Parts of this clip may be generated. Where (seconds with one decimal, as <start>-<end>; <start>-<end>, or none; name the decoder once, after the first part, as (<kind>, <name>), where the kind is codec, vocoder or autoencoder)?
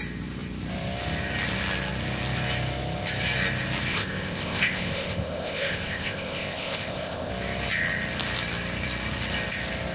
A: 3.9-7.3 (codec, ZipCodec)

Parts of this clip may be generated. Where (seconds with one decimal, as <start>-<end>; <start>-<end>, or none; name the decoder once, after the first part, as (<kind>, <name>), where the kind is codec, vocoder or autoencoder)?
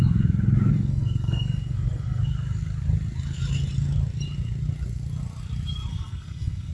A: 0.7-2.2 (codec, SNAC); 5.9-6.7